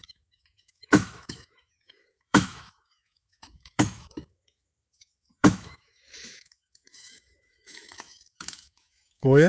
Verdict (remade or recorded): remade